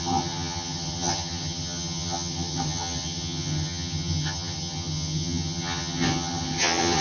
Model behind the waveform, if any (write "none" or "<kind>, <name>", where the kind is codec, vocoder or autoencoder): vocoder, HiFi-GAN